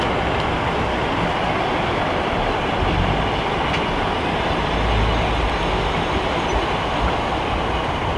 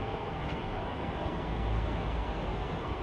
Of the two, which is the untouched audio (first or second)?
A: first